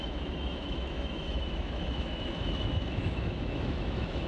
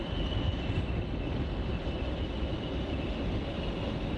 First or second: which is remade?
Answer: first